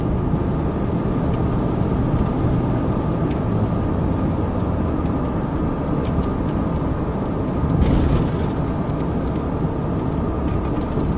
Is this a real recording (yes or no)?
yes